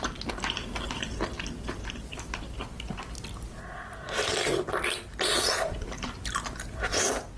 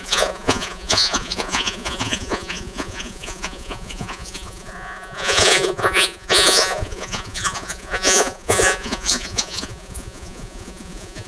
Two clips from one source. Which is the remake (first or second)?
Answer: second